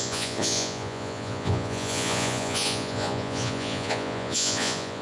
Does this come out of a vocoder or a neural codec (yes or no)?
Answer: yes